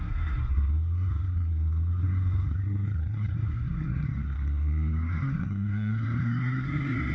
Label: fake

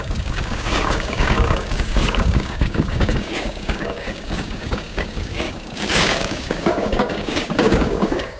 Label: fake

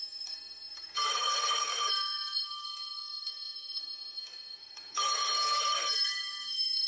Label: fake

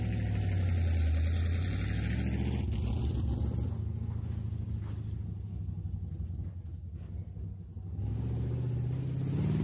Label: real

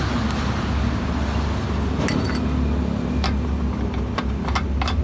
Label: real